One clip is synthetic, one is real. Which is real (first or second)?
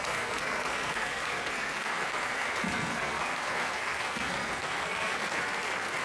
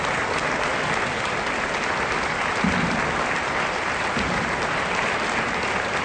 second